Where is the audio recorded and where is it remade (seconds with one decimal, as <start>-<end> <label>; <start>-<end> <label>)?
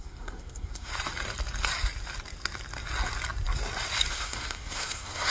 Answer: 0.0-0.9 remade; 0.9-4.1 recorded; 4.1-5.3 remade